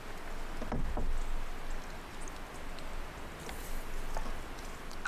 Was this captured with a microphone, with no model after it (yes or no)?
yes